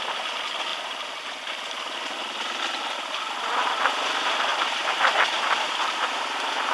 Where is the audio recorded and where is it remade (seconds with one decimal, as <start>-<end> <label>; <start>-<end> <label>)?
0.0-4.5 recorded; 4.5-5.2 remade; 5.2-6.7 recorded